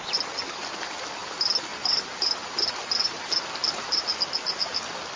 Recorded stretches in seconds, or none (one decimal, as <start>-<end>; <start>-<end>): 0.0-5.2